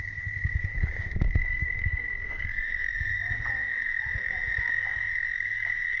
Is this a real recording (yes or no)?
no